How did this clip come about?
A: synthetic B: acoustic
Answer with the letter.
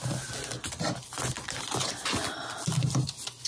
B